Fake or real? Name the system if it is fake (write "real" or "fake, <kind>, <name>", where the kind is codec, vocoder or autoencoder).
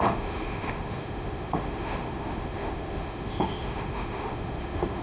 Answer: fake, autoencoder, DAC-VAE